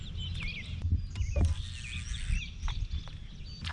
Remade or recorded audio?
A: recorded